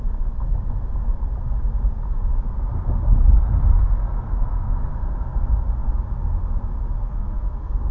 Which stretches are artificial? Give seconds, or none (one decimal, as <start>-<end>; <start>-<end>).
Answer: 4.1-4.8; 7.0-7.9